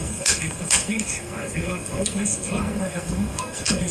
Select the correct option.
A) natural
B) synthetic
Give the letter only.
B